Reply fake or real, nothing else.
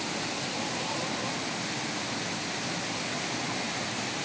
real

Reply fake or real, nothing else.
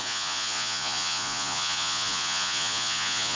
fake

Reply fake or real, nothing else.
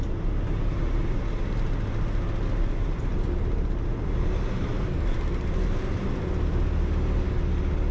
real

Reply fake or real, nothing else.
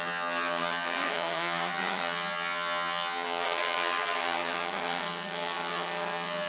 fake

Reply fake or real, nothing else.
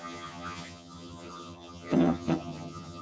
fake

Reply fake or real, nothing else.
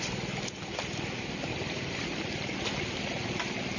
real